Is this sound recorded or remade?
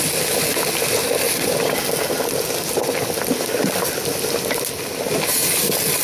recorded